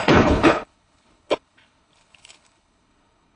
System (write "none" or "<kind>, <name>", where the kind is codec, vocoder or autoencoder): codec, HILCodec